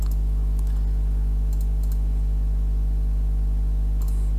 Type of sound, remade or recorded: recorded